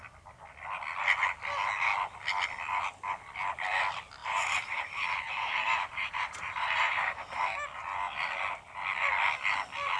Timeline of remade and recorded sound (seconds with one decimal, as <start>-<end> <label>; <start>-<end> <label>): 0.0-4.2 recorded; 4.2-7.4 remade; 7.4-10.0 recorded

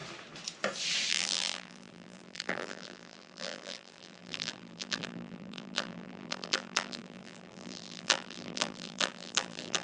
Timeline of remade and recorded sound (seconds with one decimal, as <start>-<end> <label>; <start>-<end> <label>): 0.0-1.1 recorded; 1.1-9.8 remade

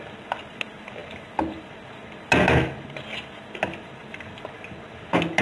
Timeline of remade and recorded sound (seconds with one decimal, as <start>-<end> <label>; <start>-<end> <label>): 0.0-5.4 recorded

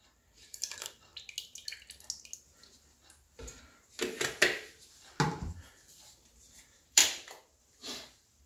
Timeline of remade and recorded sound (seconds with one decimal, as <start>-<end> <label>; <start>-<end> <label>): 0.0-1.1 remade; 1.1-5.7 recorded; 5.7-8.5 remade

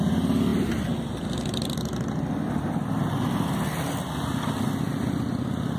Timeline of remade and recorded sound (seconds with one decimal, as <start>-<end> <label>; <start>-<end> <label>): 0.0-0.5 recorded; 0.5-3.2 remade; 3.2-5.8 recorded

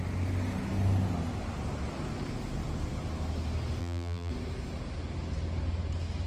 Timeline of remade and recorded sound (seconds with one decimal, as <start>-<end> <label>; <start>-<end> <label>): 0.0-3.8 recorded; 3.8-4.3 remade; 4.3-6.3 recorded